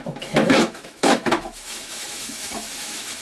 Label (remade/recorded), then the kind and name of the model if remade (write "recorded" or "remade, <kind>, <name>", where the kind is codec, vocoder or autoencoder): remade, autoencoder, DAC-VAE